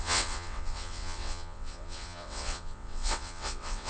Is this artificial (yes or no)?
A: yes